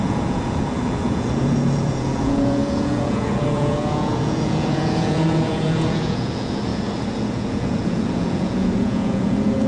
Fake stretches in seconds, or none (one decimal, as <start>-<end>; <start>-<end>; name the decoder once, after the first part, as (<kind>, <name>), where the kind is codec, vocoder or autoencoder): 0.0-9.7 (vocoder, Vocos)